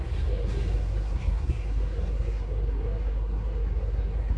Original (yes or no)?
no